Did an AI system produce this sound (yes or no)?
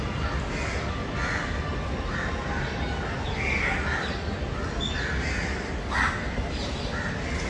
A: no